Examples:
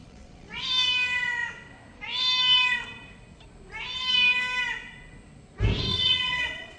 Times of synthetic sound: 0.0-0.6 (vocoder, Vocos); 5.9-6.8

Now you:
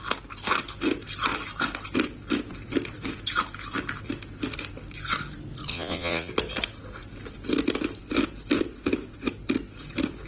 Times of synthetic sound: 5.7-6.3 (vocoder, Vocos)

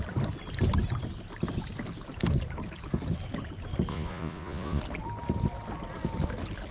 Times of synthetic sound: 3.9-4.8 (vocoder, Vocos)

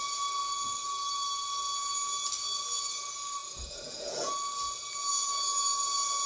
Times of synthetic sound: 3.4-4.3 (vocoder, Vocos); 5.1-6.3

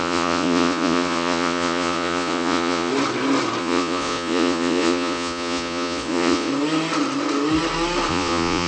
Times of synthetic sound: 0.0-2.9 (vocoder, Vocos); 3.6-6.5; 8.1-8.7

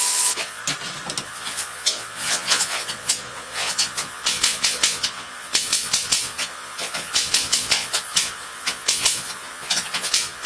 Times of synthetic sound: 0.0-0.6 (vocoder, Vocos); 1.2-10.5

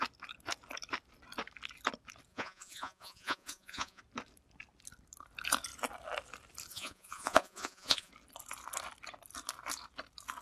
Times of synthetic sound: 2.3-4.0 (vocoder, Vocos); 6.7-8.1

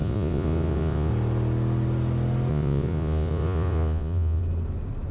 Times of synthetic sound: 0.0-1.1 (vocoder, Vocos); 2.5-4.4